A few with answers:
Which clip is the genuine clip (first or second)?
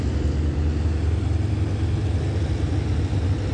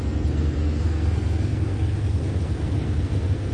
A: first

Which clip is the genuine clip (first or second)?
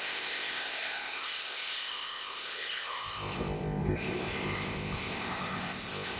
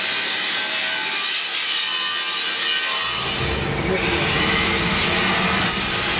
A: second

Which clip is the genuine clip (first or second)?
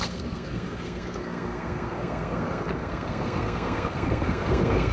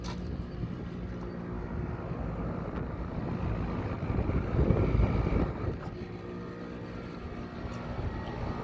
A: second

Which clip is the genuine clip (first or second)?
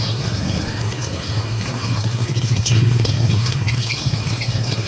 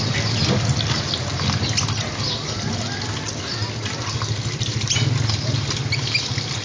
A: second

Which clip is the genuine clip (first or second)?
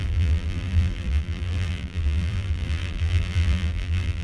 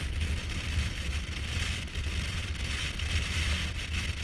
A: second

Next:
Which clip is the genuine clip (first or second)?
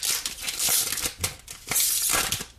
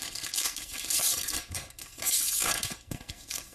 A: first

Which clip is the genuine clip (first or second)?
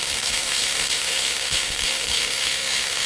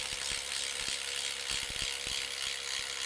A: second